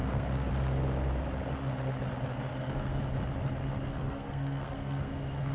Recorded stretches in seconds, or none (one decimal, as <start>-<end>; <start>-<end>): 0.5-2.5; 3.0-3.9; 5.1-5.5